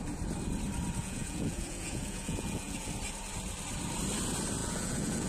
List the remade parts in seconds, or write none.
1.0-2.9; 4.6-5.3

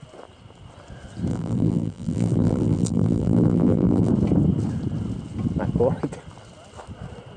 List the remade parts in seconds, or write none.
1.3-4.1

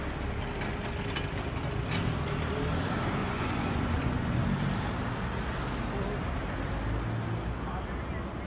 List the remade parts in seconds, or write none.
3.2-4.4

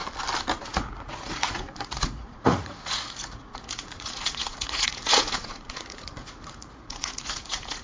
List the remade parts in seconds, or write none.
0.6-7.8

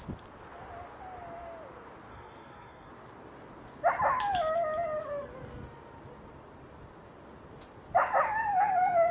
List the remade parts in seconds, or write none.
2.1-2.9

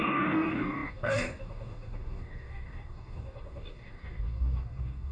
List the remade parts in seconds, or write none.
0.0-5.1

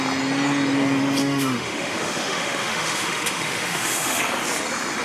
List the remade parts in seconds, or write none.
1.2-4.2

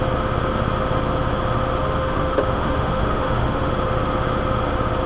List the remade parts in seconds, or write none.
1.8-3.7